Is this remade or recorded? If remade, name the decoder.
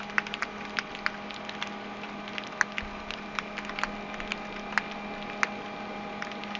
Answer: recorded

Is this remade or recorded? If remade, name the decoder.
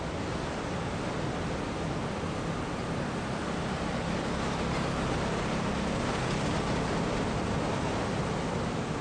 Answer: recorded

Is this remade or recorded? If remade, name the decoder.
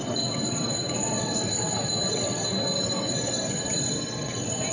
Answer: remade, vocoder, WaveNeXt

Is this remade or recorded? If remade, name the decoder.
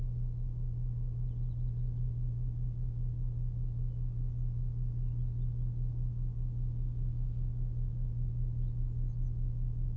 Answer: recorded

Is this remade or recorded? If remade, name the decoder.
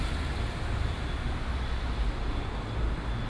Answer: recorded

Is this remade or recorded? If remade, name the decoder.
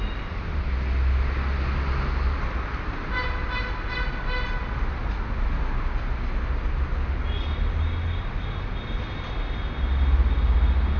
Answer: recorded